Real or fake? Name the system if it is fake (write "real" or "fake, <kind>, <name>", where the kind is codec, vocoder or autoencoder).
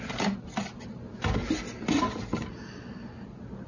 real